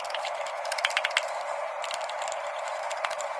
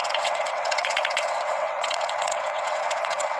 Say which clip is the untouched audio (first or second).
first